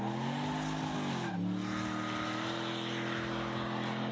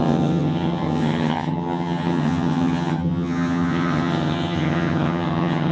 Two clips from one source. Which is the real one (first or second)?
first